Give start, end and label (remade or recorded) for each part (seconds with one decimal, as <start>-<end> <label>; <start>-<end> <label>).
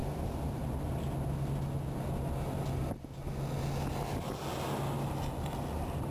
0.0-6.1 recorded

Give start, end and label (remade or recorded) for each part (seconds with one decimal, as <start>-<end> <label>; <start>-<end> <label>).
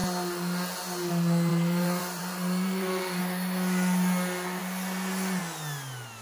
0.0-1.5 recorded; 1.5-3.2 remade; 3.2-6.2 recorded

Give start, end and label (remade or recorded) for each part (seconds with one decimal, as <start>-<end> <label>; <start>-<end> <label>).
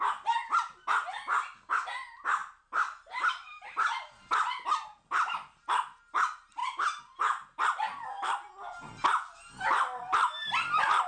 0.0-2.4 recorded; 2.4-5.7 remade; 5.7-11.1 recorded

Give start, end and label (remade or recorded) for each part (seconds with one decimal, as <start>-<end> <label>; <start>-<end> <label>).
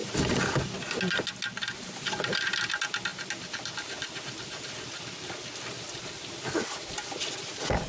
0.0-7.9 recorded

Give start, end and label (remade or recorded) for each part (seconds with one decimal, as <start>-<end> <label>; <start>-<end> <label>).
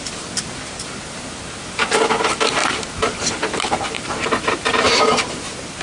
0.0-2.6 recorded; 2.6-5.0 remade; 5.0-5.8 recorded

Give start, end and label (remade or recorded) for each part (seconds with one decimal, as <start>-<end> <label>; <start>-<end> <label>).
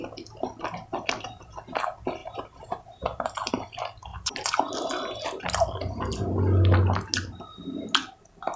0.0-2.2 recorded; 2.2-3.5 remade; 3.5-4.1 recorded; 4.1-4.7 remade; 4.7-8.6 recorded